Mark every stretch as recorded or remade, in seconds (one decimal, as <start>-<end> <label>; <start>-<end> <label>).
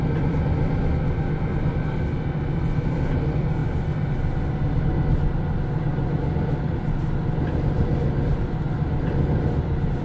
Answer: 0.0-10.0 recorded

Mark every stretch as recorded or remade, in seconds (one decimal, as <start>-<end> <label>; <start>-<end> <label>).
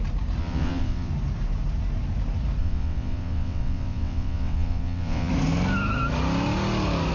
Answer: 0.0-0.4 recorded; 0.4-1.1 remade; 1.1-2.6 recorded; 2.6-5.3 remade; 5.3-7.1 recorded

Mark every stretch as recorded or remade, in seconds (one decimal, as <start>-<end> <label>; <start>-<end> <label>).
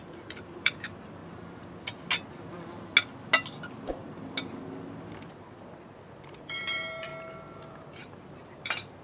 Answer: 0.0-1.2 remade; 1.2-6.4 recorded; 6.4-7.1 remade; 7.1-8.0 recorded; 8.0-9.0 remade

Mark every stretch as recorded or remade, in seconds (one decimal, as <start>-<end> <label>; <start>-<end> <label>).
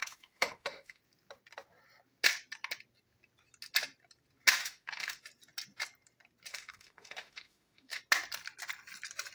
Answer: 0.0-1.0 remade; 1.0-4.6 recorded; 4.6-5.2 remade; 5.2-6.5 recorded; 6.5-8.0 remade; 8.0-9.3 recorded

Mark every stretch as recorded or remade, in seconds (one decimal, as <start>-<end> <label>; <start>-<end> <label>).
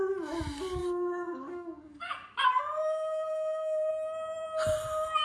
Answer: 0.0-0.8 recorded; 0.8-3.9 remade; 3.9-5.2 recorded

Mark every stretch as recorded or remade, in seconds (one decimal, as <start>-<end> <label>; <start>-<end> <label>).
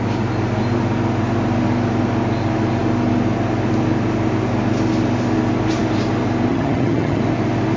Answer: 0.0-6.5 recorded; 6.5-7.2 remade; 7.2-7.8 recorded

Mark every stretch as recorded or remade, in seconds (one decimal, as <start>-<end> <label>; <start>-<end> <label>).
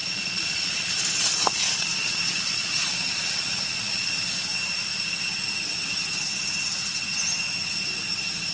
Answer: 0.0-4.1 remade; 4.1-8.5 recorded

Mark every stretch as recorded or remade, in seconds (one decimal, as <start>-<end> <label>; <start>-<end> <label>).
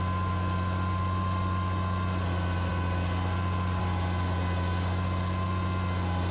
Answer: 0.0-6.3 recorded